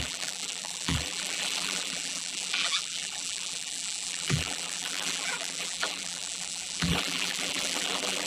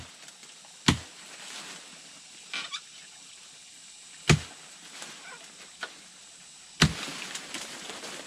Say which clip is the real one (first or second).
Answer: second